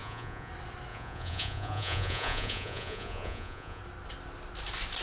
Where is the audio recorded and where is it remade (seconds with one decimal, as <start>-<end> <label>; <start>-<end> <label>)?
0.0-0.5 remade; 0.5-0.9 recorded; 0.9-3.8 remade; 3.8-5.0 recorded